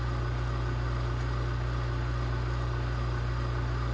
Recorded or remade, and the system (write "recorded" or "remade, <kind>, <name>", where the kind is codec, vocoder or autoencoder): recorded